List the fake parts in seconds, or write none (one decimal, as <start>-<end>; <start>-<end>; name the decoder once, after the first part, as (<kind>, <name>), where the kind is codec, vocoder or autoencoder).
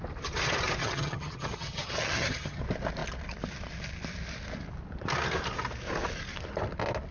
0.8-2.6 (vocoder, HiFi-GAN)